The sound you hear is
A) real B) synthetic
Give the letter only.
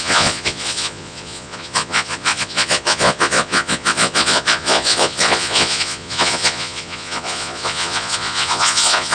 B